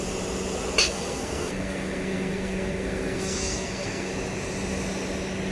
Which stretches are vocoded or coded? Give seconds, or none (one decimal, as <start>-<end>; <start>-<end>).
0.8-4.1

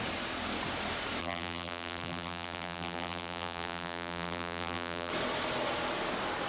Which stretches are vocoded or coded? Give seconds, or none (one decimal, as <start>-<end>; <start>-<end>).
1.2-5.1